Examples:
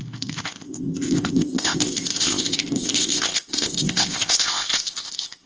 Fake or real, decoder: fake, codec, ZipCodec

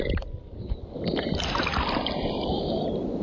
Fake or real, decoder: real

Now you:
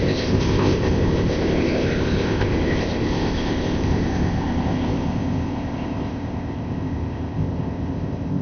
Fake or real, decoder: fake, codec, ZipCodec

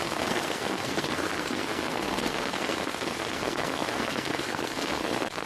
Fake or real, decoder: fake, codec, SNAC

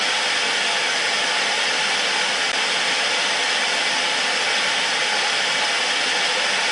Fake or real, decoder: real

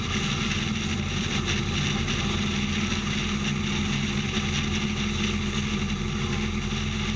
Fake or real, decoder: real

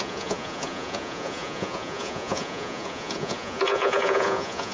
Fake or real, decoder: fake, vocoder, Vocos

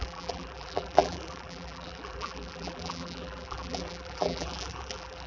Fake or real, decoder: fake, vocoder, BigVGAN v2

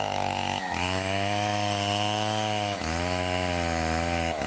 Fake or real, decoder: fake, autoencoder, DAC-VAE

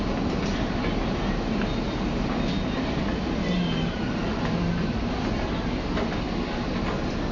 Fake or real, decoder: real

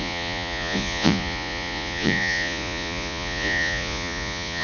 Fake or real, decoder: fake, vocoder, Vocos